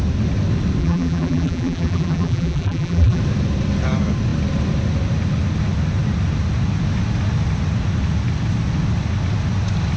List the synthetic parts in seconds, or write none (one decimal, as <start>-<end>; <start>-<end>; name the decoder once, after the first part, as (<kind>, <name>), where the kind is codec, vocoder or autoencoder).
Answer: 0.8-3.2 (vocoder, BigVGAN v2)